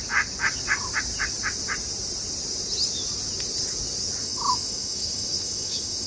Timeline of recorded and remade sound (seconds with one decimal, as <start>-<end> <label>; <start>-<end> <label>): 0.0-4.2 recorded; 4.2-6.1 remade

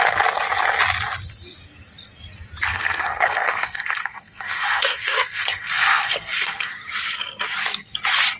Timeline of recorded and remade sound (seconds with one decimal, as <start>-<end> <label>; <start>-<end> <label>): 0.0-2.7 recorded; 2.7-6.7 remade; 6.7-8.4 recorded

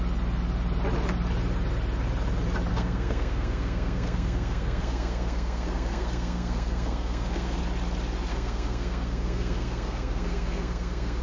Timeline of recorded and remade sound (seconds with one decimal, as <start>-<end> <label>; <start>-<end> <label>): 0.0-2.7 recorded; 2.7-7.6 remade; 7.6-8.3 recorded; 8.3-11.2 remade

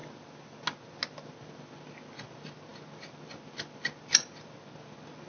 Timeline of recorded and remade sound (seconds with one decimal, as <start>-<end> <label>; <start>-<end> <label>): 0.0-5.3 recorded

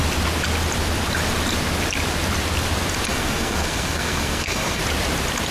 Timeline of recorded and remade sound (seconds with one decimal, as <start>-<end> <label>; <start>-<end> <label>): 0.0-3.1 recorded; 3.1-4.8 remade; 4.8-5.5 recorded